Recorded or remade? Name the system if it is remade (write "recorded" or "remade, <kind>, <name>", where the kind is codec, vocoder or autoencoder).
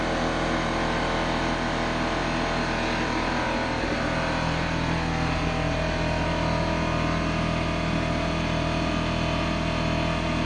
recorded